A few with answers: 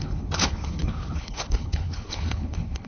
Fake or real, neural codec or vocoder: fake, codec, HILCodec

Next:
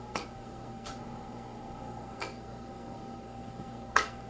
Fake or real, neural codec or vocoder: fake, codec, SNAC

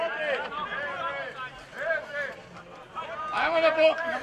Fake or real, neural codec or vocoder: real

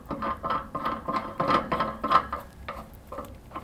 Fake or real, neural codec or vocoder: real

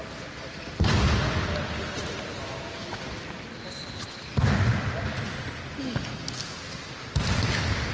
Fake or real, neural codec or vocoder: real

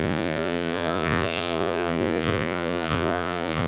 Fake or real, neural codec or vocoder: fake, vocoder, Vocos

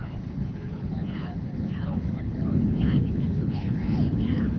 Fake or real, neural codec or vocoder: fake, codec, HILCodec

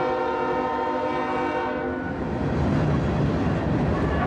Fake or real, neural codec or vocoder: real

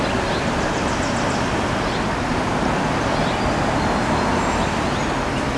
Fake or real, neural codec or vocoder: real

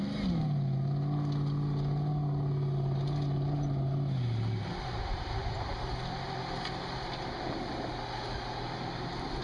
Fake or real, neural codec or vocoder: real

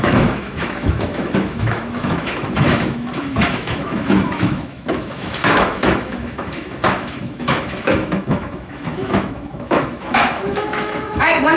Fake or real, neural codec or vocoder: fake, autoencoder, DAC-VAE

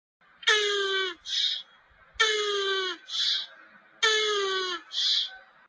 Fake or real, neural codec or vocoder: real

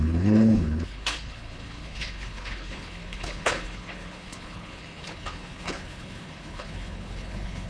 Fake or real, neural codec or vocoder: fake, codec, HILCodec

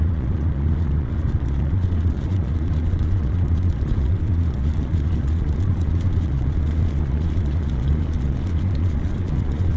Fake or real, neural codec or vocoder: fake, vocoder, Vocos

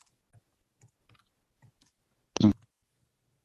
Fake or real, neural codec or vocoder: real